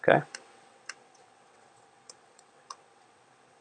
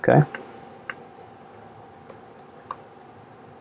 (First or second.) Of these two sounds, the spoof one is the first